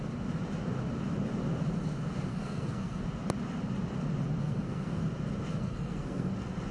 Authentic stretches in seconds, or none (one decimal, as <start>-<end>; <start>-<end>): 0.0-2.3; 3.0-4.4; 5.0-5.5; 6.3-6.7